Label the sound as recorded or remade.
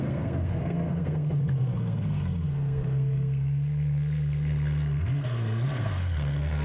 remade